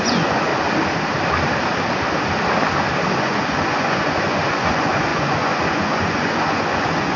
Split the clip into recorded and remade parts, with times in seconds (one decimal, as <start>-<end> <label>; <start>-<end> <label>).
0.0-0.5 remade; 0.5-3.2 recorded; 3.2-7.2 remade

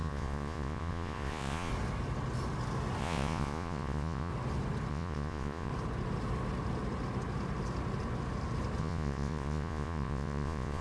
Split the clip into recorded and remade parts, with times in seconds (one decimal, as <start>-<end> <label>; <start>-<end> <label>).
0.0-1.7 remade; 1.7-3.0 recorded; 3.0-4.3 remade; 4.3-4.9 recorded; 4.9-5.7 remade; 5.7-8.8 recorded; 8.8-10.8 remade

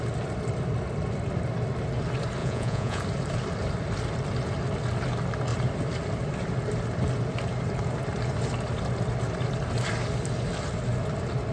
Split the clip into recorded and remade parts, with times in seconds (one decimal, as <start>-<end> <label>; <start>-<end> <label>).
0.0-2.4 recorded; 2.4-3.0 remade; 3.0-11.5 recorded

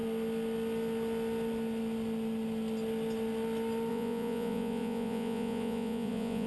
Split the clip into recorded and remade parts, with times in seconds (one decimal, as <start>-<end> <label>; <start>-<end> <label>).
0.0-3.9 recorded; 3.9-6.5 remade

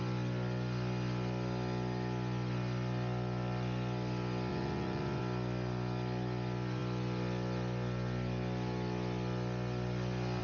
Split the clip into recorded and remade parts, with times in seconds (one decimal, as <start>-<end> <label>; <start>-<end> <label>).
0.0-4.5 recorded; 4.5-5.2 remade; 5.2-10.4 recorded

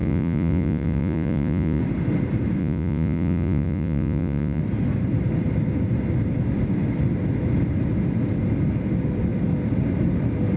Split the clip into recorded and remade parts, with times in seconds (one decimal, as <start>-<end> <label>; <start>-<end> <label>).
0.0-1.8 remade; 1.8-2.6 recorded; 2.6-4.6 remade; 4.6-10.6 recorded

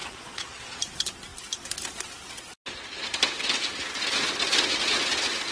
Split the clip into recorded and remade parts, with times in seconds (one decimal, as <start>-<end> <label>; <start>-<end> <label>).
0.0-0.8 remade; 0.8-5.5 recorded